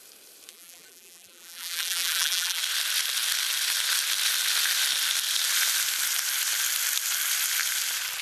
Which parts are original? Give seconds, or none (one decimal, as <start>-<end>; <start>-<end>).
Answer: 0.0-0.5; 2.6-8.2